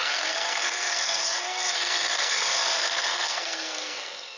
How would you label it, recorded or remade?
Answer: remade